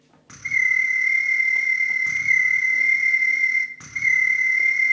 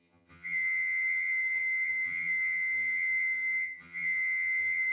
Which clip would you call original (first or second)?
first